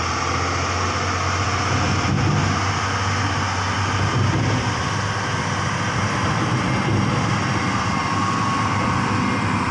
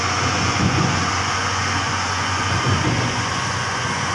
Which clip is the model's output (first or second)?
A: second